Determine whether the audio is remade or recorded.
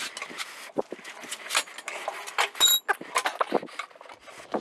recorded